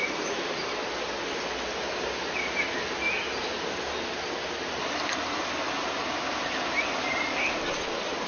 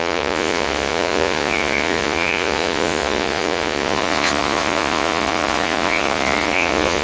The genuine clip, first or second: first